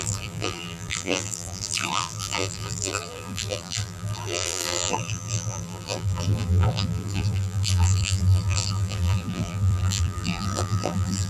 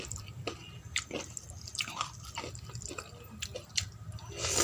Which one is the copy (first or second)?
first